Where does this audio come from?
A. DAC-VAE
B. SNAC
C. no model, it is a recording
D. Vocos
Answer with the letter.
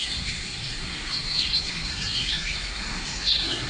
B